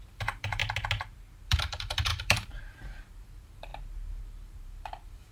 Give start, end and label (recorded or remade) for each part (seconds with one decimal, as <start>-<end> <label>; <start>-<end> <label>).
0.0-0.6 remade; 0.6-1.5 recorded; 1.5-3.7 remade; 3.7-4.2 recorded; 4.2-5.3 remade